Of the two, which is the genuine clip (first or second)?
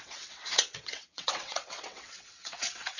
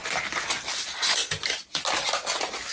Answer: second